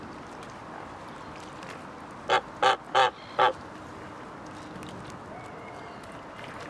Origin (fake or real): real